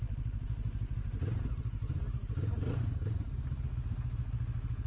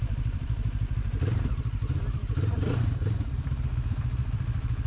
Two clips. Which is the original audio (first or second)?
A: first